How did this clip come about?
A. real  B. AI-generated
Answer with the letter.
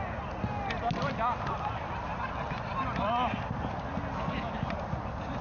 A